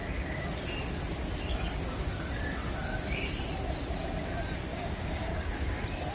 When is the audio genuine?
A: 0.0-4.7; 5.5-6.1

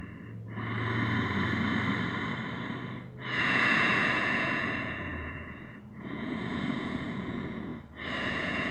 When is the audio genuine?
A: 0.0-3.4; 7.7-8.2

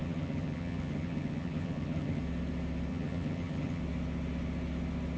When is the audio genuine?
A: 2.2-2.9; 3.8-5.2

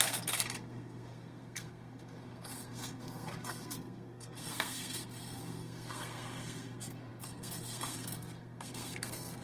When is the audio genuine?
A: none

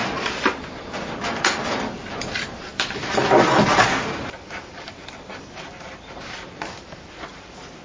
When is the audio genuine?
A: 0.0-7.8

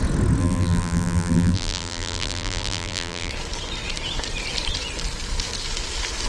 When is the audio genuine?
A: 0.0-0.4; 3.3-6.3

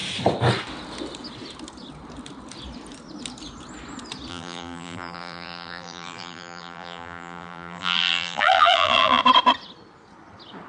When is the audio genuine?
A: 0.0-4.3; 9.2-10.7